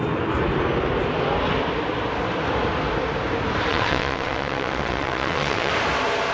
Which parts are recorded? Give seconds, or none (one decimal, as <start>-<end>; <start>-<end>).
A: 0.0-3.7; 5.7-6.3